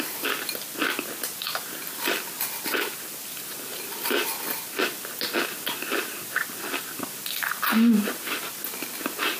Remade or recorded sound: recorded